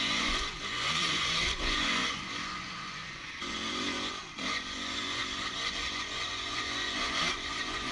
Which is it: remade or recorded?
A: remade